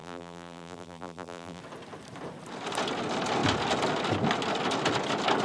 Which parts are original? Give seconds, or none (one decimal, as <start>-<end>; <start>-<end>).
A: 1.6-5.4